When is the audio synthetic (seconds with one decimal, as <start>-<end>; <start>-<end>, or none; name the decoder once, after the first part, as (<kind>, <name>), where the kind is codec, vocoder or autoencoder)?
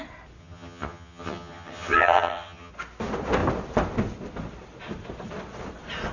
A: 0.4-2.7 (vocoder, HiFi-GAN)